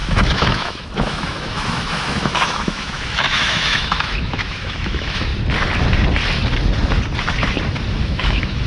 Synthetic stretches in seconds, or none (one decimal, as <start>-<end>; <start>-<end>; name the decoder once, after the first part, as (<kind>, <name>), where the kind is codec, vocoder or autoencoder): 0.0-5.3 (autoencoder, DAC-VAE); 8.0-8.7